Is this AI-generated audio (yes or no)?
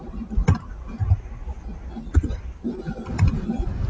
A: no